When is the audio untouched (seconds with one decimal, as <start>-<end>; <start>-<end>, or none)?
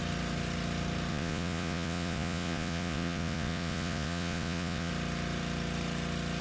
0.0-1.1; 4.9-6.4